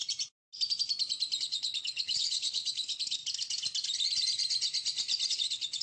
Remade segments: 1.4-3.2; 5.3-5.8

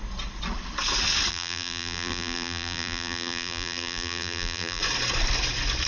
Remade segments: 1.3-4.8

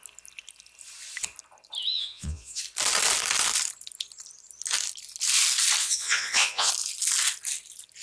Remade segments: 1.9-2.6; 5.8-6.7

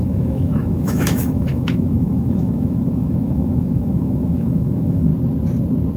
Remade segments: 0.0-5.1

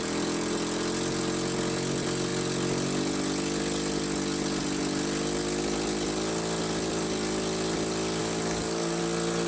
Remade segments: 8.2-9.0

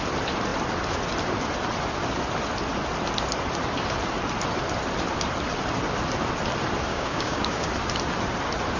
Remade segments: 6.9-7.7

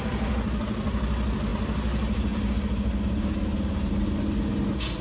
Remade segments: none

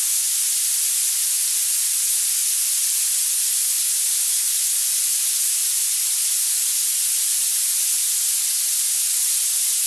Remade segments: none